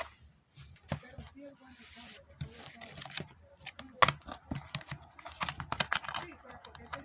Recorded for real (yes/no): yes